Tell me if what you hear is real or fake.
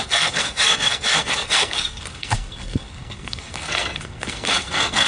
fake